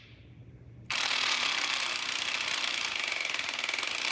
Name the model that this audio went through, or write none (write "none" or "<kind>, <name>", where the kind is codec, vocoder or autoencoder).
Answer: none